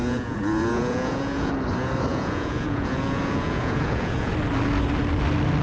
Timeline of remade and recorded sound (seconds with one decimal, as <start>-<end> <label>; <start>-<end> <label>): 0.0-1.5 remade; 1.5-2.1 recorded; 2.1-4.3 remade; 4.3-5.6 recorded